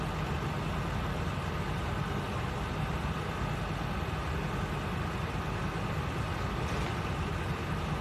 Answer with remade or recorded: recorded